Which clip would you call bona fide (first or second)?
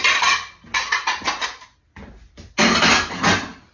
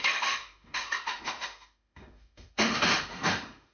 first